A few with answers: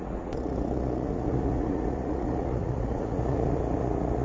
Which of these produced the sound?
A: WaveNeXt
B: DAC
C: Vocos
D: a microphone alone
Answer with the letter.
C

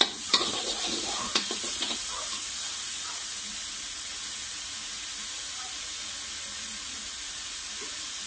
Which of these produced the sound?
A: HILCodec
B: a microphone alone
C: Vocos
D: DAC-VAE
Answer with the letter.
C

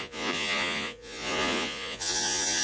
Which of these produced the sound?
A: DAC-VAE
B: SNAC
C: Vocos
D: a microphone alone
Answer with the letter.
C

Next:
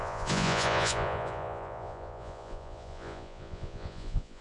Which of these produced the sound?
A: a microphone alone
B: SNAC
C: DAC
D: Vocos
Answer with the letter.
D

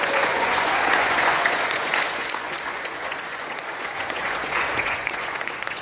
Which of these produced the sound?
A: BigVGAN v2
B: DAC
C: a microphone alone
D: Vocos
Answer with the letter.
D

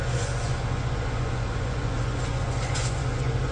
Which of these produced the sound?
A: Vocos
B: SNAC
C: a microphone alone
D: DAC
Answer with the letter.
A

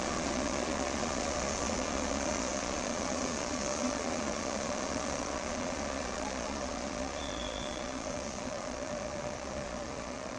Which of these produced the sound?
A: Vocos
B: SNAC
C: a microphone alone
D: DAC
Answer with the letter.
A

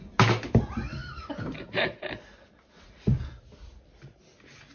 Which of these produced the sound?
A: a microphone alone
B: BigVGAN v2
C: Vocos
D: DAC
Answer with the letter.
A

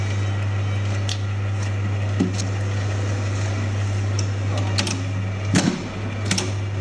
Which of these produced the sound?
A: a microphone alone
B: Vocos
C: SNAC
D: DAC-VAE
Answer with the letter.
A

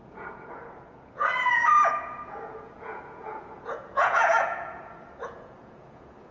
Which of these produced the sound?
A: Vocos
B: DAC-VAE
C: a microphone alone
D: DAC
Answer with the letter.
A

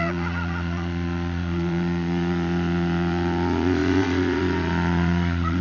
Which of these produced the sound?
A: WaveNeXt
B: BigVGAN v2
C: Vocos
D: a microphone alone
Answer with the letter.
C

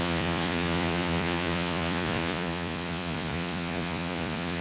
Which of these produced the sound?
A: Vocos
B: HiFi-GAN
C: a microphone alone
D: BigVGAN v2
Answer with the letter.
A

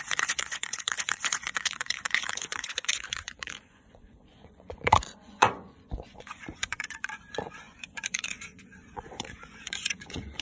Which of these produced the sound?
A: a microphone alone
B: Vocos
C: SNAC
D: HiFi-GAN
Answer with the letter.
B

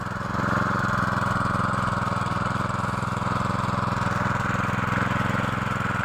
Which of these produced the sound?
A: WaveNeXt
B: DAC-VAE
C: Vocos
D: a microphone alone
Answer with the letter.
D